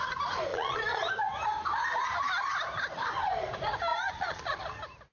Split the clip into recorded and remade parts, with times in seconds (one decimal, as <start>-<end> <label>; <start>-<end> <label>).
0.0-0.5 recorded; 0.5-1.1 remade; 1.1-3.9 recorded; 3.9-4.6 remade; 4.6-5.1 recorded